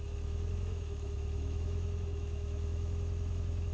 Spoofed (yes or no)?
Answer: yes